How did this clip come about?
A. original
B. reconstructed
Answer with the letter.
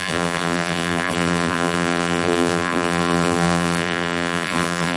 B